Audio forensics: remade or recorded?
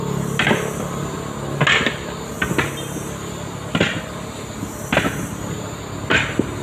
recorded